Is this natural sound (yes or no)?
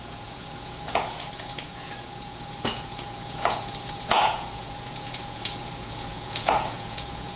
no